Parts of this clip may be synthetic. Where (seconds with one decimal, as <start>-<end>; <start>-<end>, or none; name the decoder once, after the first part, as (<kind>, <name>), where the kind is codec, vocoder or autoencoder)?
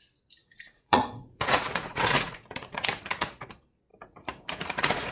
0.4-3.5 (vocoder, Vocos); 3.9-5.1